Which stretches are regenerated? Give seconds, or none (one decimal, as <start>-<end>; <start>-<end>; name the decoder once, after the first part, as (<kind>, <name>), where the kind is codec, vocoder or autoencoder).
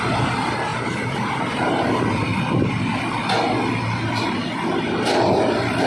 0.7-1.4 (vocoder, BigVGAN v2)